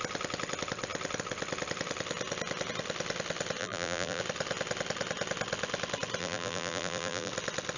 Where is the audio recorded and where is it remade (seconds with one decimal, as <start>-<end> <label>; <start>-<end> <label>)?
0.0-3.6 recorded; 3.6-4.2 remade; 4.2-6.2 recorded; 6.2-7.3 remade; 7.3-7.8 recorded